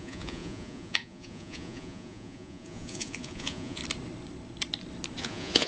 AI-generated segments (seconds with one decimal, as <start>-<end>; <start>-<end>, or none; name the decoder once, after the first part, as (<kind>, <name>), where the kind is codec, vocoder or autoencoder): 0.0-3.8 (vocoder, Vocos); 5.2-5.7